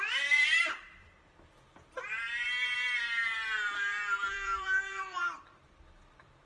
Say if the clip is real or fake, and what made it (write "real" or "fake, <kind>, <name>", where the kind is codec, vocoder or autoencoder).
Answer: fake, vocoder, BigVGAN v2